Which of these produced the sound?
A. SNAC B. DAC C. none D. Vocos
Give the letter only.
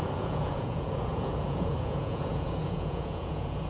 D